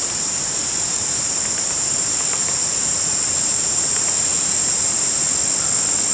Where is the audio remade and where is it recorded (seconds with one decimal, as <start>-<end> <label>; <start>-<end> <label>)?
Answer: 0.0-5.2 remade; 5.2-6.1 recorded